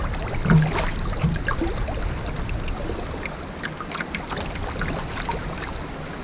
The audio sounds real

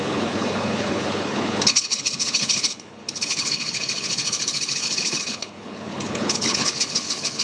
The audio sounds fake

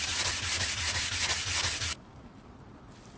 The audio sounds real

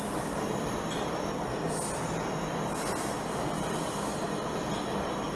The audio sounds real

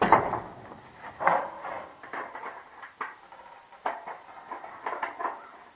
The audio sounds real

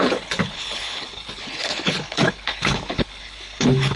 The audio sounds fake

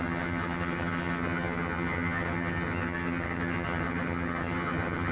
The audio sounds fake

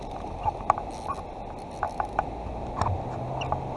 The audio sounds real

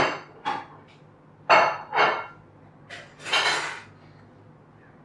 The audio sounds real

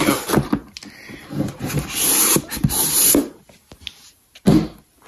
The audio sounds real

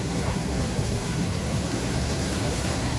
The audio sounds fake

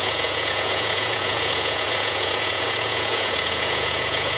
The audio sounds fake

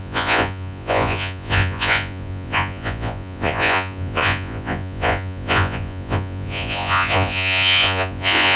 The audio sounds fake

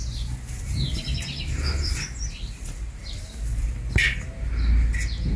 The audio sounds real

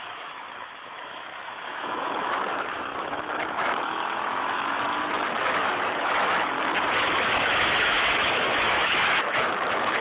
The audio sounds fake